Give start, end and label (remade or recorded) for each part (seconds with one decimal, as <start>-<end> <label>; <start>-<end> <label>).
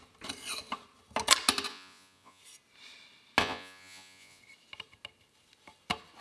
0.0-1.7 recorded; 1.7-2.4 remade; 2.4-3.4 recorded; 3.4-4.4 remade; 4.4-6.2 recorded